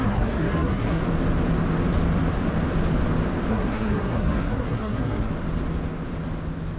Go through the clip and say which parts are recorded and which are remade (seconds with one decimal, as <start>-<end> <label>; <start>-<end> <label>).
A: 0.0-1.0 remade; 1.0-3.5 recorded; 3.5-5.3 remade; 5.3-6.8 recorded